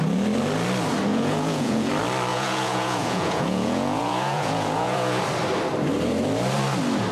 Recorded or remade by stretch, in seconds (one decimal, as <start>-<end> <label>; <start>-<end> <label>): 0.0-1.1 recorded; 1.1-1.9 remade; 1.9-2.3 recorded; 2.3-5.2 remade; 5.2-7.1 recorded